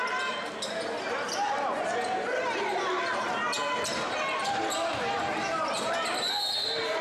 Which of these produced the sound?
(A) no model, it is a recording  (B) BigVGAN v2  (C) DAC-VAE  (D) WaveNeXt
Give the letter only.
A